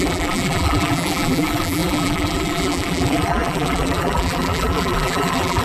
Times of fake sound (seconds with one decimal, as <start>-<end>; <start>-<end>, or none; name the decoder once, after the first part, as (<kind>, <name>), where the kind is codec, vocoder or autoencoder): 0.0-5.6 (vocoder, BigVGAN v2)